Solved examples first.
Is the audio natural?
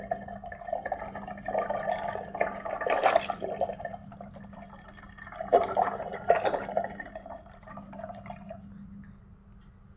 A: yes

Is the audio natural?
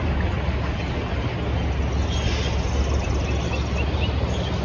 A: yes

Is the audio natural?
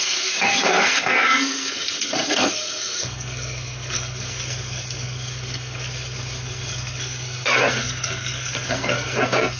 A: no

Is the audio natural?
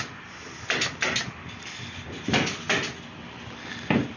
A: yes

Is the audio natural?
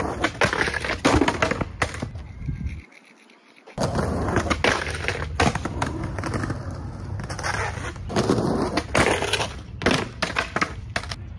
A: yes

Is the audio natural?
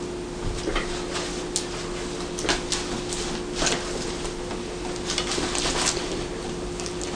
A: yes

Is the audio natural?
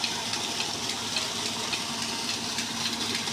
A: yes